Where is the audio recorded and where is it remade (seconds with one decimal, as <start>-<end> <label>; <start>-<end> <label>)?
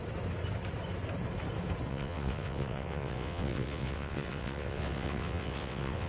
0.0-1.9 recorded; 1.9-6.1 remade